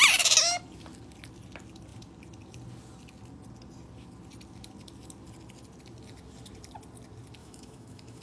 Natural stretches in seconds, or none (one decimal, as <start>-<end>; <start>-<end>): 0.0-7.4